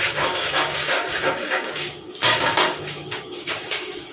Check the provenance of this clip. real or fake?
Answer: fake